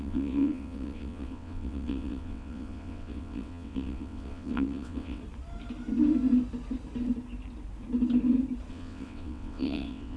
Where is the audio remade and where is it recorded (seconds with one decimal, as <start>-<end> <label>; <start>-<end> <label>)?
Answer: 0.0-5.2 remade; 5.2-8.7 recorded; 8.7-10.2 remade